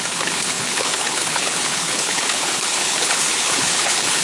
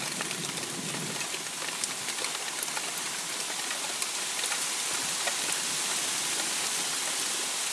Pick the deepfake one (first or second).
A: first